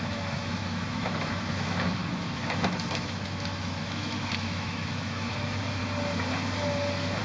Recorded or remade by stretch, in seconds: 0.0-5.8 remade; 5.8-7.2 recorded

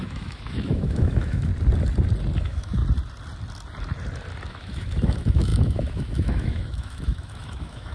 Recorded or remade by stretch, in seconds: 0.0-1.5 remade; 1.5-2.4 recorded; 2.4-2.8 remade; 2.8-4.5 recorded; 4.5-7.9 remade